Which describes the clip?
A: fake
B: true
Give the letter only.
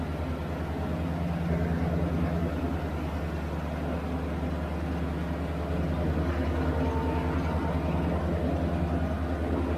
B